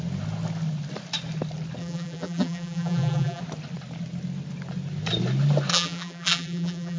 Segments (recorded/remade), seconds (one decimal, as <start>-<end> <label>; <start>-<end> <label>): 0.0-1.8 recorded; 1.8-3.4 remade; 3.4-5.7 recorded; 5.7-7.0 remade